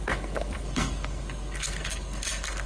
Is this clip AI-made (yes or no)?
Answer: yes